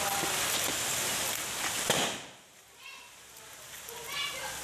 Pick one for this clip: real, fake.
real